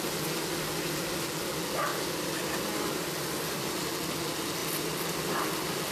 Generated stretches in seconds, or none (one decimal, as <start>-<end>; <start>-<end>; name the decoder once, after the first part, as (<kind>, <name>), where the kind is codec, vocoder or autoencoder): 1.9-3.9 (vocoder, BigVGAN v2); 4.6-5.3